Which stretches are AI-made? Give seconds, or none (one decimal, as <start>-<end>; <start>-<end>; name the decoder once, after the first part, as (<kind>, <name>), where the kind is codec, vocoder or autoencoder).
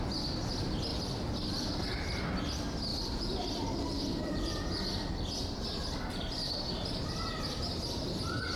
0.9-2.2 (vocoder, BigVGAN v2); 2.9-7.3